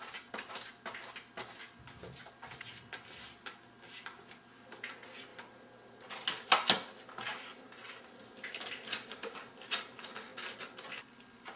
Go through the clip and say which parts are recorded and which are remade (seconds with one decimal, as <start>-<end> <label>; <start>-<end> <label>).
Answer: 0.0-11.6 recorded